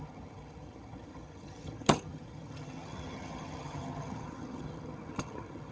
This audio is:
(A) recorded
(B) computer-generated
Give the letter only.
B